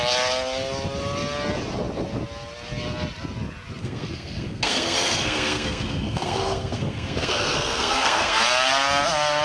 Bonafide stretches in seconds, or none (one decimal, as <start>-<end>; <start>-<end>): 0.0-3.8; 8.4-9.4